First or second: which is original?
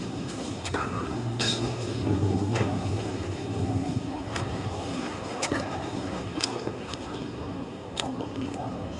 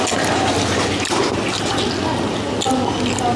second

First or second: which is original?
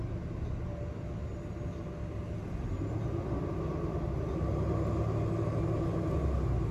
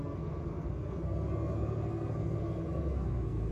first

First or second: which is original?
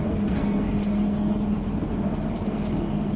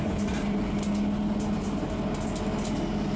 second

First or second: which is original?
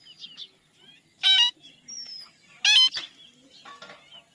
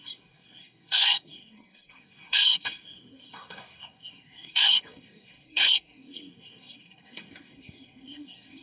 first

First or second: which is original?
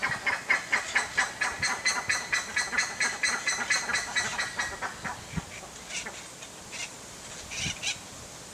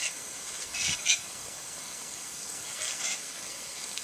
first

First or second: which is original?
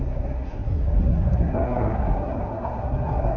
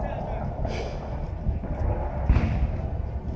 second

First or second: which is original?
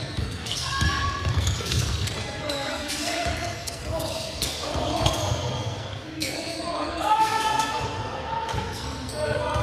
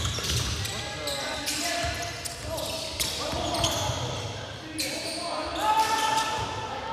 second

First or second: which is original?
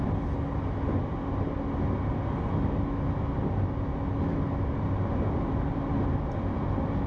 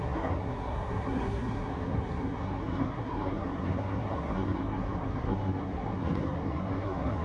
first